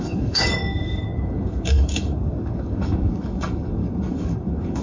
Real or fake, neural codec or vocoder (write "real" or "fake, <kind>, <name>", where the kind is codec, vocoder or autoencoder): fake, codec, DAC